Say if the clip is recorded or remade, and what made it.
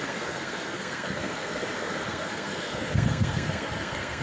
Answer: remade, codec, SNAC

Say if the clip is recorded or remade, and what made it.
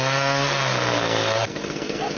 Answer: remade, codec, SNAC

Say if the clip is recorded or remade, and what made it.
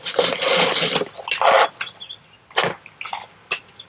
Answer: recorded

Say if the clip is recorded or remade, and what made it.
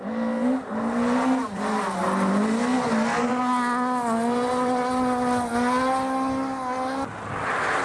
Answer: recorded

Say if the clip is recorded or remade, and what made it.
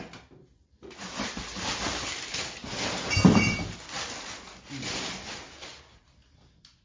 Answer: recorded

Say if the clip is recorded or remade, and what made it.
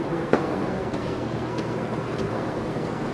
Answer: remade, codec, SNAC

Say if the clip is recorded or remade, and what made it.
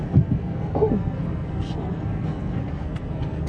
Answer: remade, codec, SNAC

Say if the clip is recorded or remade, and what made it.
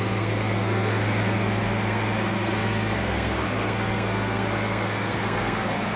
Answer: remade, codec, SNAC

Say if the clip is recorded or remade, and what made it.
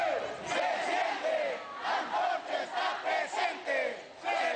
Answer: recorded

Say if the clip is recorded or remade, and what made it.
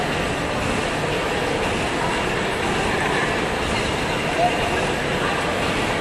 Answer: recorded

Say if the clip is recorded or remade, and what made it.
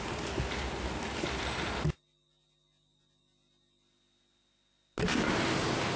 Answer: recorded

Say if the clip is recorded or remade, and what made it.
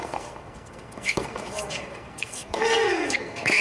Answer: remade, codec, SNAC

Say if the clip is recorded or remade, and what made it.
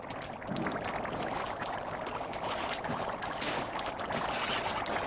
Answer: recorded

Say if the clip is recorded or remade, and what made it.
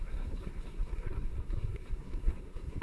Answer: remade, codec, SNAC